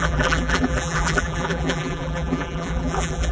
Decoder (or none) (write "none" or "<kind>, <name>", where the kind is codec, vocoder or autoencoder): vocoder, BigVGAN v2